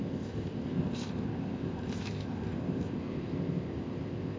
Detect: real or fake fake